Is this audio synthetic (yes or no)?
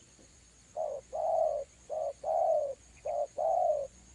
yes